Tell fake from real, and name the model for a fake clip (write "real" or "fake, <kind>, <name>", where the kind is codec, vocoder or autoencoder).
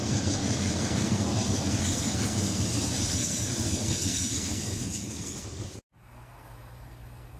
fake, codec, SNAC